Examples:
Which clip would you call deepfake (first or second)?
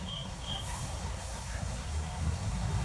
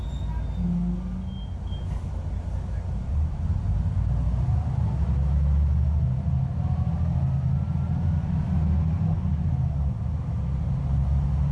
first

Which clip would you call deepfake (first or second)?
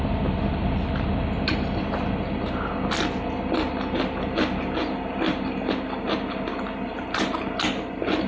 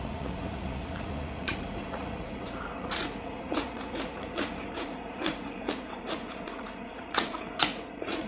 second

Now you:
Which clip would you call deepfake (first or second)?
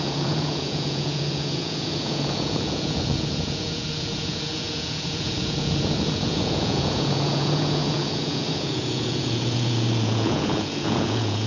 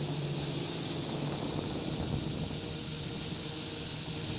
first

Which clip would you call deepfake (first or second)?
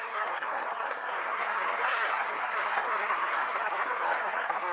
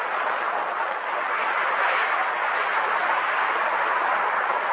first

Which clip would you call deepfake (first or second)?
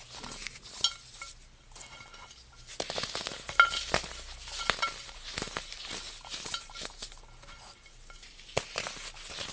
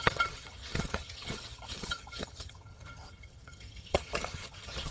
second